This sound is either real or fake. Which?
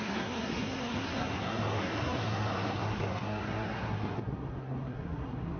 fake